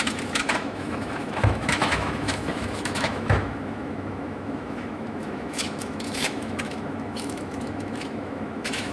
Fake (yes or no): yes